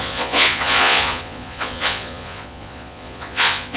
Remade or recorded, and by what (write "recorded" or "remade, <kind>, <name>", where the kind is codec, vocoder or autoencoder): remade, vocoder, Vocos